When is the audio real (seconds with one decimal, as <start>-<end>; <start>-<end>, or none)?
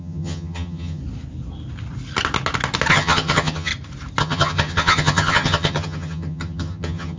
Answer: 1.0-2.9; 3.7-4.2